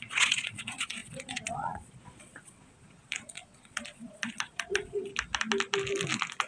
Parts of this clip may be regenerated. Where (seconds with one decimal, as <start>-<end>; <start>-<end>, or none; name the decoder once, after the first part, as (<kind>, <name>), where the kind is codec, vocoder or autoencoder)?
0.0-5.1 (vocoder, Vocos)

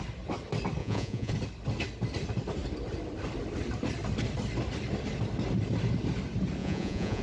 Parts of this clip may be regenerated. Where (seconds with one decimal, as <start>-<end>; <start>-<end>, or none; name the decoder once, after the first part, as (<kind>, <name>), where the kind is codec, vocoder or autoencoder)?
0.8-1.3 (vocoder, Vocos); 6.6-7.2

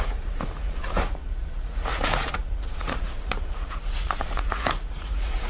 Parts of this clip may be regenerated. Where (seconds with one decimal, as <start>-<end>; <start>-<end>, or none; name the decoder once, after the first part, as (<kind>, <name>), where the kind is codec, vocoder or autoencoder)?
0.0-5.5 (vocoder, Vocos)

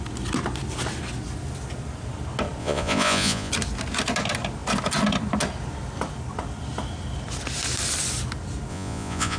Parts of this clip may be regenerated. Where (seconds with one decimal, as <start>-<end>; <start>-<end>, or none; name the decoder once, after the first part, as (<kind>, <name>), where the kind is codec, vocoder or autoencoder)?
2.6-3.5 (vocoder, Vocos); 8.7-9.4

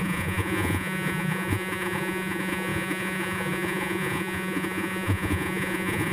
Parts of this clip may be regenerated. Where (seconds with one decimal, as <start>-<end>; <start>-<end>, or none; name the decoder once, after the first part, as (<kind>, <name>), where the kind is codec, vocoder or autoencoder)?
0.0-6.1 (vocoder, Vocos)